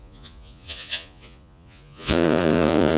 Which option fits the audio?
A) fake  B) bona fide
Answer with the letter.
A